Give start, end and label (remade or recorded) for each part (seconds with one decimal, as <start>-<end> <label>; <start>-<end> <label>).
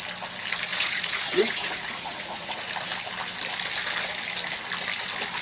0.0-0.7 recorded; 0.7-2.6 remade; 2.6-5.4 recorded